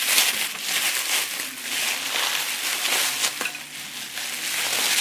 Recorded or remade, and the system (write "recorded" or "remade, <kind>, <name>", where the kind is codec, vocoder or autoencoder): recorded